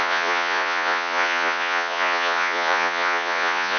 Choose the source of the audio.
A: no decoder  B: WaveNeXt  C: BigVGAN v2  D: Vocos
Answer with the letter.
D